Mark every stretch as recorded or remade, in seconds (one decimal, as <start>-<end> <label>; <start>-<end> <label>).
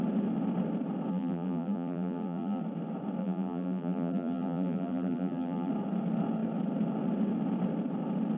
0.0-1.1 recorded; 1.1-2.6 remade; 2.6-3.2 recorded; 3.2-5.7 remade; 5.7-8.4 recorded